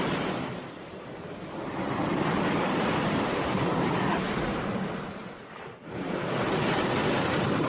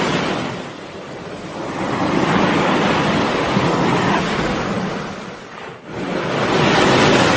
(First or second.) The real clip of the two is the second